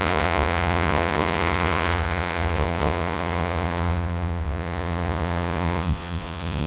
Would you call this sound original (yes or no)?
no